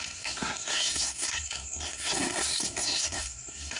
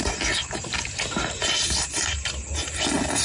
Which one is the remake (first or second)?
first